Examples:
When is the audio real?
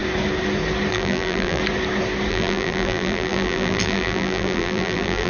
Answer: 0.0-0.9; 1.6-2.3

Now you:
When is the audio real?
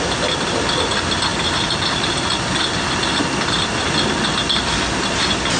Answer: 0.0-1.3; 2.5-5.6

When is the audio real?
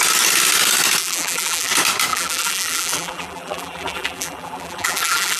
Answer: 0.0-1.0; 1.7-2.1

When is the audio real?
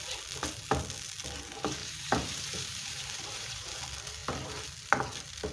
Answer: 0.0-1.8; 3.8-5.5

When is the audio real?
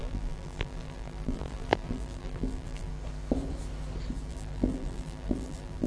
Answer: 2.9-4.3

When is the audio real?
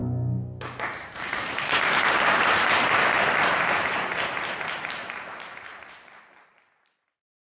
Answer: 0.0-0.9; 4.1-4.7